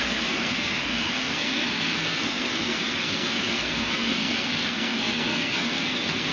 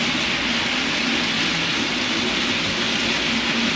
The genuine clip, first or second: second